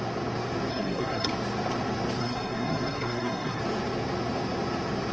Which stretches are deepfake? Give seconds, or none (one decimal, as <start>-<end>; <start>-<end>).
0.7-1.3; 2.2-3.6